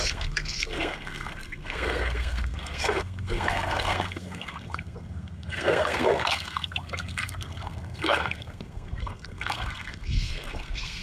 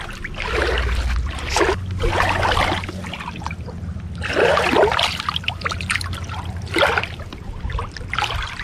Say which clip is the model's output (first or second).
first